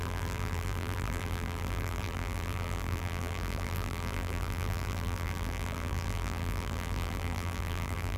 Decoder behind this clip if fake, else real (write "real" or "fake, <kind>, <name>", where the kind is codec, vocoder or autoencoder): fake, vocoder, BigVGAN v2